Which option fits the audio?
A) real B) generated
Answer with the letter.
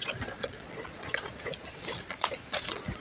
B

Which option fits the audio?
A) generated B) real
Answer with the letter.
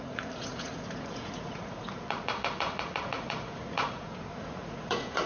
A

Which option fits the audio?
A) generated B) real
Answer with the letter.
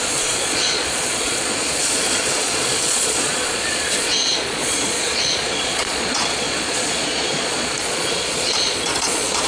A